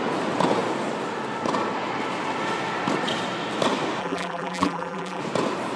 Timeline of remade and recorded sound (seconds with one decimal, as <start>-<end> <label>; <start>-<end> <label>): 0.0-4.0 recorded; 4.0-5.2 remade; 5.2-5.8 recorded